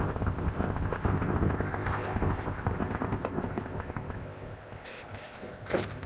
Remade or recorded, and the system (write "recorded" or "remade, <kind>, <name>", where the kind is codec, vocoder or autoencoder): remade, codec, ZipCodec